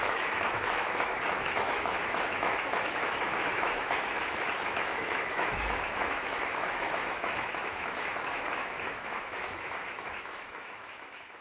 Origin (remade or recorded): remade